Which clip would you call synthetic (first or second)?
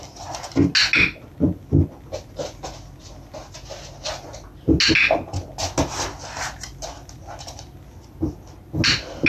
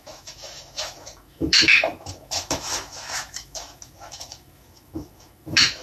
second